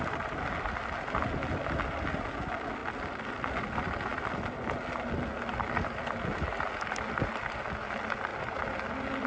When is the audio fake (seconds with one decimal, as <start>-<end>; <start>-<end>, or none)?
none